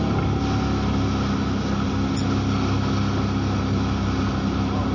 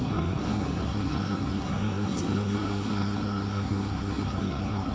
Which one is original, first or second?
first